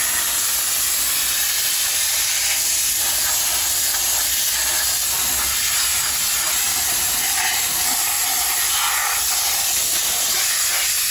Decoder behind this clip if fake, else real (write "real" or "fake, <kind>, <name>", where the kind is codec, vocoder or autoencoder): real